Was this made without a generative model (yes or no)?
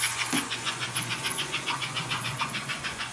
no